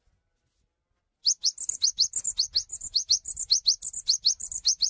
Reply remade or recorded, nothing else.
recorded